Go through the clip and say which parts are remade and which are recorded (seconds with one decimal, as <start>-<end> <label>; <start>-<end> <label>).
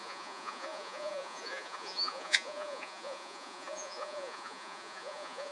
0.0-5.5 remade